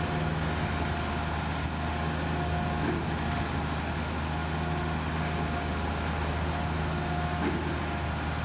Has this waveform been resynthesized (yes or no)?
no